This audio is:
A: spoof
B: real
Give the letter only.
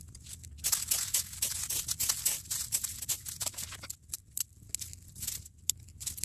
B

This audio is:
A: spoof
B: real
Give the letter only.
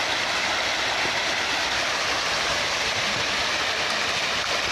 B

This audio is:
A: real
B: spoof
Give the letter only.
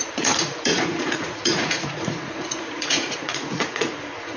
B